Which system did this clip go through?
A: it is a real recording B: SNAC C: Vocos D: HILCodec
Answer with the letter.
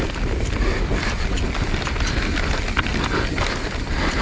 A